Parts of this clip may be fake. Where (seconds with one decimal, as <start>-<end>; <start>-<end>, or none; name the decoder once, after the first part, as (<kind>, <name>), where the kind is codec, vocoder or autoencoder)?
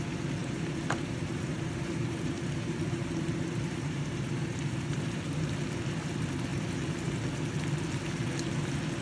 0.4-5.5 (vocoder, BigVGAN v2)